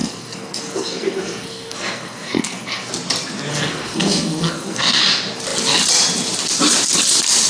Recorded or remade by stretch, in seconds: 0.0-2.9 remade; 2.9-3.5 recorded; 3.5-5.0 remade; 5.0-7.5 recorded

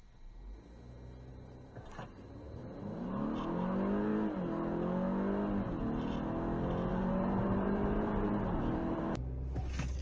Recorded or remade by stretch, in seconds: 0.0-1.3 recorded; 1.3-2.6 remade; 2.6-6.9 recorded; 6.9-9.2 remade; 9.2-10.0 recorded

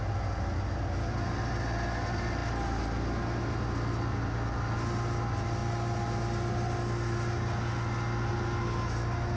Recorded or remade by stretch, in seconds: 0.0-9.4 recorded

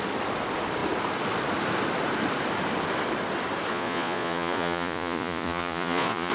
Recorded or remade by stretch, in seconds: 0.0-3.7 recorded; 3.7-6.3 remade